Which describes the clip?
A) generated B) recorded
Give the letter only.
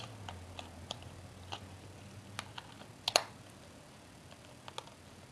B